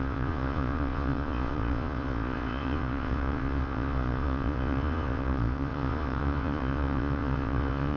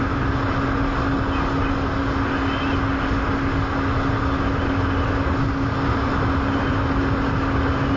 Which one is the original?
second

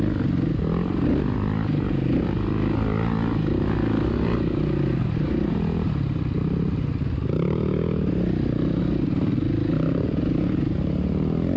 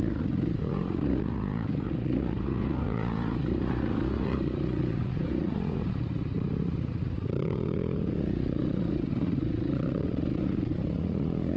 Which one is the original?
first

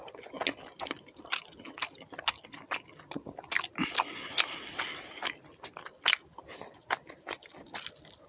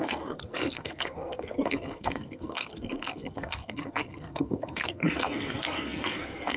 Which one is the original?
first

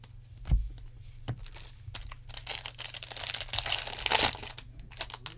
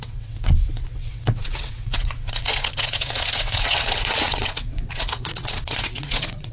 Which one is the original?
first